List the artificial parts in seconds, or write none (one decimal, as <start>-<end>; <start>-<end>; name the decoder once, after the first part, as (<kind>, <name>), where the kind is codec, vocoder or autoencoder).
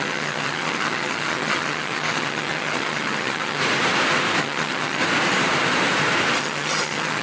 0.0-3.6 (vocoder, HiFi-GAN); 4.4-5.0; 6.4-7.2